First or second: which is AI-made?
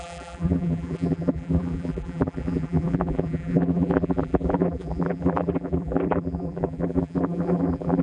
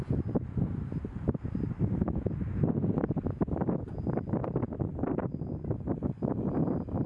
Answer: first